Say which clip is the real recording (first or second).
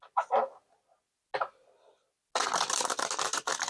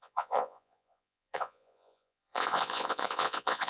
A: first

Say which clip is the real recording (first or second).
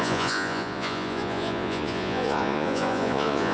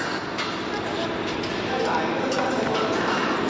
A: second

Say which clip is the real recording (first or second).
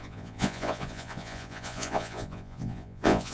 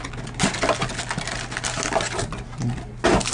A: second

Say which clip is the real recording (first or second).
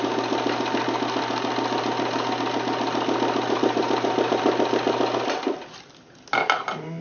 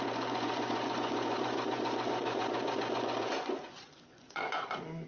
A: first